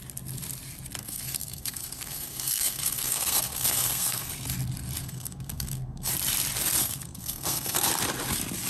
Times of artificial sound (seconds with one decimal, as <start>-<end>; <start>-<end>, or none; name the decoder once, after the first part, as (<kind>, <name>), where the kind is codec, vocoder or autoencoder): 1.0-4.3 (codec, SNAC); 5.0-6.1; 6.8-7.9